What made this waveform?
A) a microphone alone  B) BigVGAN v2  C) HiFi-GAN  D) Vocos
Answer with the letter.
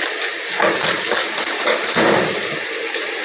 A